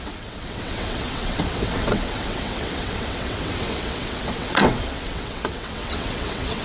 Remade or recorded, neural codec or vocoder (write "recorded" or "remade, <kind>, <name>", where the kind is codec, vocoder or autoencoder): remade, vocoder, WaveNeXt